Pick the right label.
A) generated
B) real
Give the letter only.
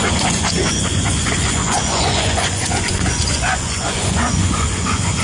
A